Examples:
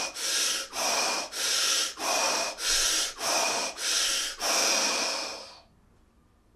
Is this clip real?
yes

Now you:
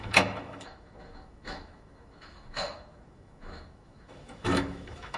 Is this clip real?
no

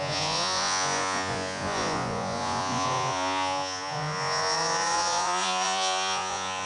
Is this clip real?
no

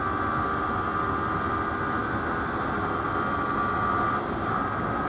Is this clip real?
yes